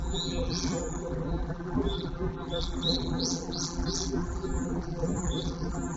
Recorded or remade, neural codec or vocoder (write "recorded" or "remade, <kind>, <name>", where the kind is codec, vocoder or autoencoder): remade, vocoder, BigVGAN v2